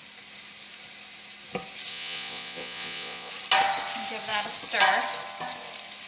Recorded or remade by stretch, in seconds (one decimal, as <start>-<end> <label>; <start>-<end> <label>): 0.0-1.9 recorded; 1.9-3.3 remade; 3.3-6.1 recorded